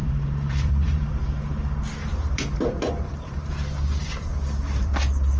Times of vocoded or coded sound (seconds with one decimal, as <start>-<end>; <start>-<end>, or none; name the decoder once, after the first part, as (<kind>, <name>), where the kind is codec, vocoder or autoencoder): 0.0-1.1 (vocoder, BigVGAN v2); 2.0-3.5; 4.0-5.0